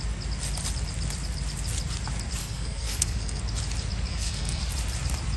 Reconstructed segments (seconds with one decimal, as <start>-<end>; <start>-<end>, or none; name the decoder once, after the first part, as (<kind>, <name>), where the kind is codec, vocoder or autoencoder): 2.4-3.4 (codec, SNAC); 4.1-4.6